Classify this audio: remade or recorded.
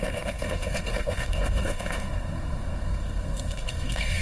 remade